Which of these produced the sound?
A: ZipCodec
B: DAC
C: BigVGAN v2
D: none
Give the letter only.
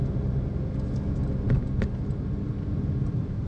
D